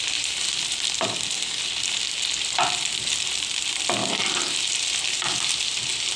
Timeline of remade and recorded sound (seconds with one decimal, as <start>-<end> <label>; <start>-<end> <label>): 0.0-6.2 recorded